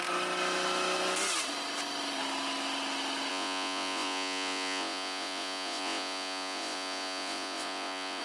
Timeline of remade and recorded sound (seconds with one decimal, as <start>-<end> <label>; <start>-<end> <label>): 0.0-3.3 recorded; 3.3-8.2 remade